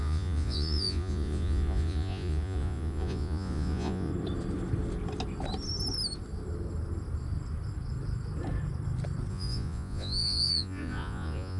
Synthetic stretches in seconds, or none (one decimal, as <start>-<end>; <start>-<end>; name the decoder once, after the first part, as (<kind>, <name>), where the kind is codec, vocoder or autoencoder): 0.0-4.1 (vocoder, Vocos); 9.3-11.6